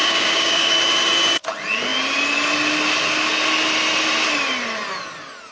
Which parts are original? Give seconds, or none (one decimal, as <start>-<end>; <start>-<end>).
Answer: 0.7-5.5